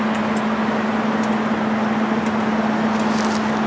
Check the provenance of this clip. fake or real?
real